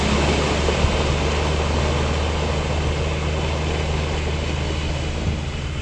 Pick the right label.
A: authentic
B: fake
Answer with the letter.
A